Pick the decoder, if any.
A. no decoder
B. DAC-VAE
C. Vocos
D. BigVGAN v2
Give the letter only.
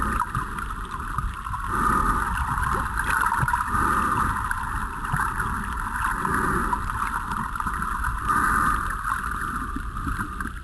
A